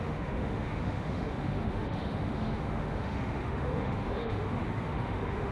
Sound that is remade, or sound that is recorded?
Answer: remade